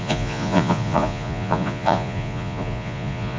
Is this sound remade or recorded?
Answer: remade